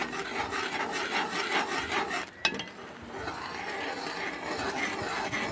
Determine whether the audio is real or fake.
real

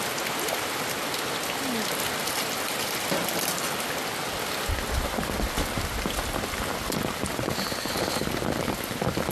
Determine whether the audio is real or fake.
real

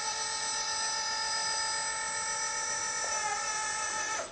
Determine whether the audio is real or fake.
real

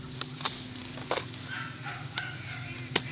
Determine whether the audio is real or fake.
real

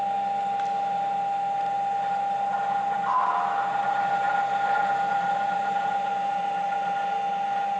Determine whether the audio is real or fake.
real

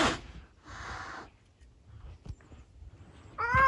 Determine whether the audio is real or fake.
real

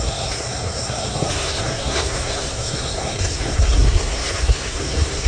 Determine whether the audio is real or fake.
fake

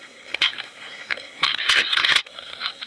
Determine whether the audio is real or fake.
fake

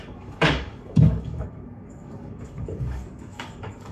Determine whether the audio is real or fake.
fake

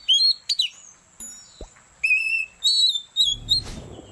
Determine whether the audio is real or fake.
real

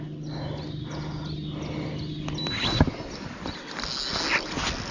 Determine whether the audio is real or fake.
real